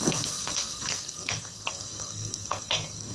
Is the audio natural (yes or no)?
no